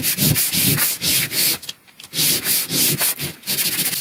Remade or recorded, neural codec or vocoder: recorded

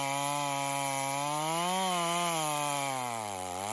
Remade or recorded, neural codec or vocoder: recorded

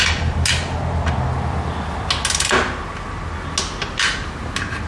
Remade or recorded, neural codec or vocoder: recorded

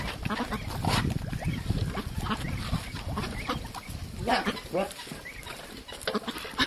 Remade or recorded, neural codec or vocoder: recorded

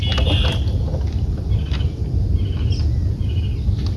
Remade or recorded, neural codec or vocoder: recorded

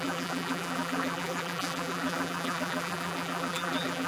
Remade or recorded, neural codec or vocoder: remade, vocoder, BigVGAN v2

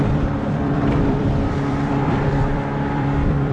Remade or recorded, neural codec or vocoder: remade, vocoder, BigVGAN v2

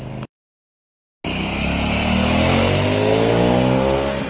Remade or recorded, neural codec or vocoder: recorded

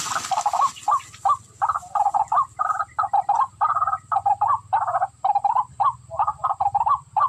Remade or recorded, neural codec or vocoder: recorded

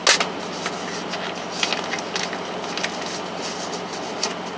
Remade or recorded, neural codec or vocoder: recorded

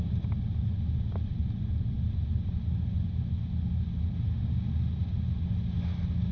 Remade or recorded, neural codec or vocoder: recorded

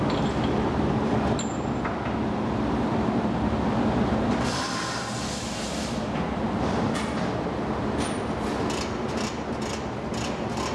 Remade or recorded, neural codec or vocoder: recorded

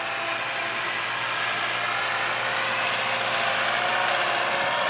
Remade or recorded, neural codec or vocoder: recorded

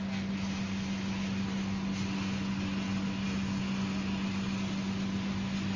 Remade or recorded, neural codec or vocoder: recorded